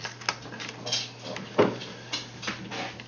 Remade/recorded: recorded